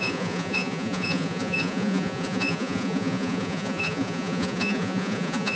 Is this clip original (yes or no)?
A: no